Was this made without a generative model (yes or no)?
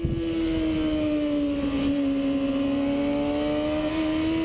yes